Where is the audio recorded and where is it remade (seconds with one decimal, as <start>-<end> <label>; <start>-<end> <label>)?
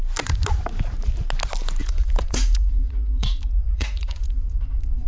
0.0-1.8 recorded; 1.8-5.1 remade